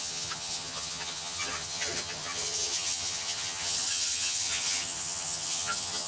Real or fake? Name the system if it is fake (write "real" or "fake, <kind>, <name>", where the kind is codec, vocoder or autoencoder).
fake, vocoder, HiFi-GAN